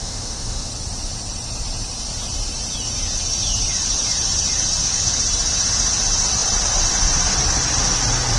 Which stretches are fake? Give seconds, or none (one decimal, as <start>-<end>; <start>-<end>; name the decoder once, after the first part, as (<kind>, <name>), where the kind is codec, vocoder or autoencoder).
0.0-0.7 (autoencoder, DAC-VAE)